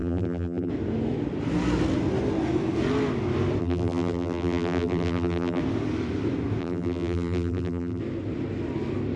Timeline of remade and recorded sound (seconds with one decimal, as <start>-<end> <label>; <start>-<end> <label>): 0.0-0.7 remade; 0.7-3.6 recorded; 3.6-5.6 remade; 5.6-6.6 recorded; 6.6-8.0 remade; 8.0-9.2 recorded